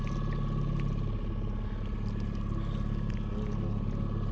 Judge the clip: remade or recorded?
recorded